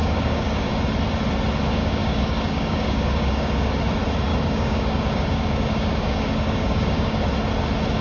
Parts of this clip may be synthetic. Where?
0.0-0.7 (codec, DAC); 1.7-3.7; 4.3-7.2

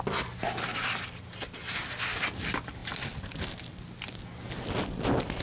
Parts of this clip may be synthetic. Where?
0.7-1.4 (vocoder, BigVGAN v2)

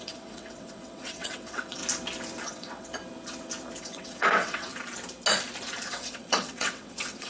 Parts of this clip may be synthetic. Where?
0.0-1.8 (vocoder, WaveNeXt); 2.4-2.9; 3.8-4.7; 5.9-7.3

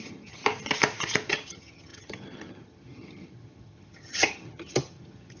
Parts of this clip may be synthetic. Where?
0.0-0.4 (vocoder, HiFi-GAN); 1.3-5.4

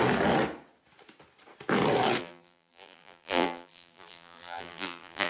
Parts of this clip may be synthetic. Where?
2.2-5.3 (vocoder, BigVGAN v2)

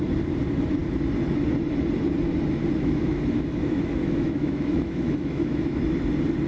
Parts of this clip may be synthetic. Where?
2.7-5.8 (autoencoder, DAC-VAE)

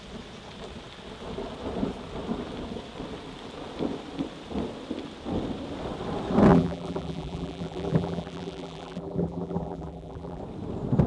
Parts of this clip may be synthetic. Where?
6.5-10.4 (vocoder, BigVGAN v2)

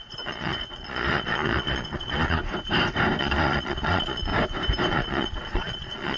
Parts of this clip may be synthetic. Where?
0.0-2.4 (vocoder, Vocos); 3.2-4.3; 4.9-6.2